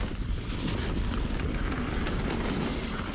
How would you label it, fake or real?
real